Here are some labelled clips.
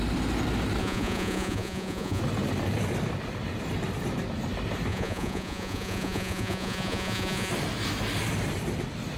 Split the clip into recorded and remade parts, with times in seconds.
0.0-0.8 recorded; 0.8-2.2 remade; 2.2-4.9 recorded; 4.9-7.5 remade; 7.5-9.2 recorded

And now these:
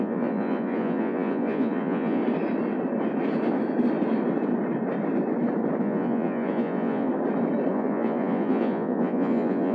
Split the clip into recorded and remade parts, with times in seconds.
0.0-2.2 remade; 2.2-5.8 recorded; 5.8-7.1 remade; 7.1-7.7 recorded; 7.7-9.7 remade

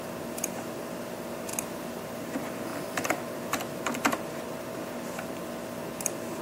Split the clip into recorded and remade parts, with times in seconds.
0.0-6.4 recorded

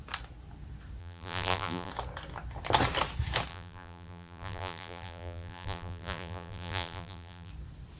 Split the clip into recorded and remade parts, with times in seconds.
0.0-1.0 recorded; 1.0-1.9 remade; 1.9-3.5 recorded; 3.5-7.5 remade; 7.5-8.0 recorded

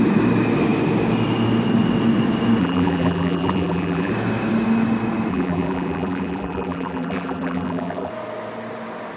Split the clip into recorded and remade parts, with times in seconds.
0.0-2.6 recorded; 2.6-4.1 remade; 4.1-5.3 recorded; 5.3-8.1 remade; 8.1-9.2 recorded

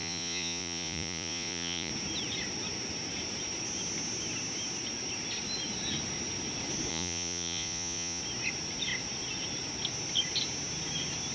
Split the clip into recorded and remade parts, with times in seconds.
0.0-1.9 remade; 1.9-6.9 recorded; 6.9-8.2 remade; 8.2-11.3 recorded

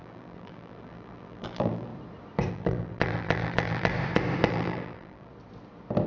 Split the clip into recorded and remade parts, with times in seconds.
0.0-1.9 remade; 1.9-2.5 recorded; 2.5-3.9 remade; 3.9-4.5 recorded; 4.5-5.3 remade; 5.3-6.1 recorded

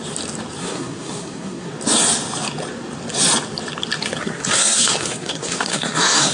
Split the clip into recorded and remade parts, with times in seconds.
0.0-0.6 recorded; 0.6-1.7 remade; 1.7-4.2 recorded; 4.2-6.3 remade